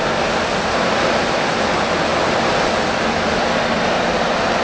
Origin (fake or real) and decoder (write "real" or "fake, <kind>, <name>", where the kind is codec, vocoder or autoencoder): real